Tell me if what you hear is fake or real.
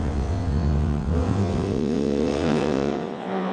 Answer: fake